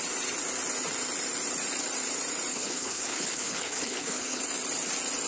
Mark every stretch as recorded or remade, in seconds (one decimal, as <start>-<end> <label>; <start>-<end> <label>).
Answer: 0.0-2.5 recorded; 2.5-4.4 remade; 4.4-5.3 recorded